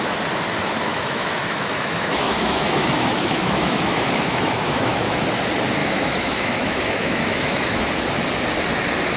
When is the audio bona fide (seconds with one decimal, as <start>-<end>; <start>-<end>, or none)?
0.0-0.9; 5.2-5.8; 7.9-9.2

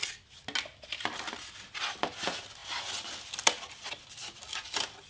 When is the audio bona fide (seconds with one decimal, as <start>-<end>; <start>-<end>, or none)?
0.0-5.1

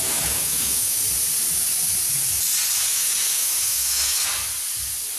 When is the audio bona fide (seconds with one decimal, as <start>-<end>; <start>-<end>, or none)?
1.0-2.9; 4.3-5.2

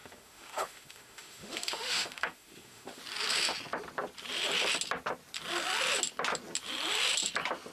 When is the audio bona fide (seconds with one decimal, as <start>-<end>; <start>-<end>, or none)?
3.0-7.7

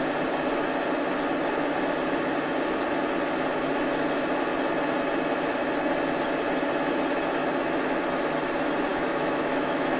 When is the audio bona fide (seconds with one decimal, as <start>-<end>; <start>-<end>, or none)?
0.0-8.9